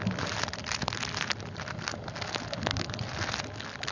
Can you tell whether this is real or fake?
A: real